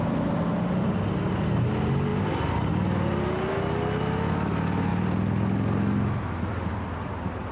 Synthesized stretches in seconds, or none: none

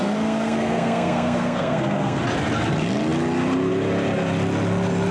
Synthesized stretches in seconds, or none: 0.0-2.2 (codec, SNAC)

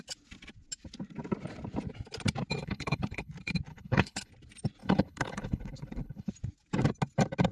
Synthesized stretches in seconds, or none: 2.6-3.3 (codec, HILCodec); 3.7-4.3; 4.8-6.3

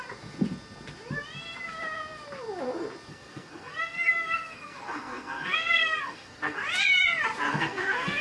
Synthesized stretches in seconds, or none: 3.1-6.6 (codec, SNAC); 7.5-8.2

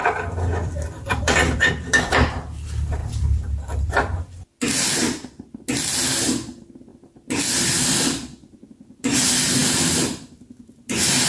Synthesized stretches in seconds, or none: 0.0-1.7 (vocoder, BigVGAN v2); 3.0-3.9

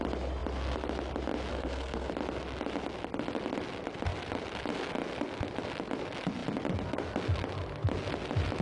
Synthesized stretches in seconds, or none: 1.5-2.1 (codec, SNAC)

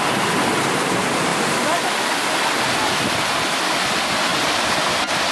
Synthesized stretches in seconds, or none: 4.3-4.8 (vocoder, BigVGAN v2)